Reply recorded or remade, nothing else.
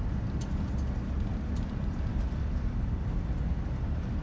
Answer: recorded